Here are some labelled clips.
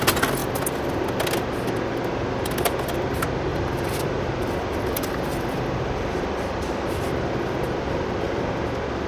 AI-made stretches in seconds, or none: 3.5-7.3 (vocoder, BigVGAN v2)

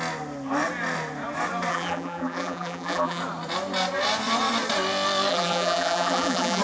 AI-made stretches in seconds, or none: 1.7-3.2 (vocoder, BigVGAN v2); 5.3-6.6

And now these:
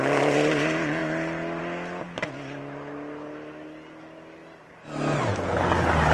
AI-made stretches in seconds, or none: none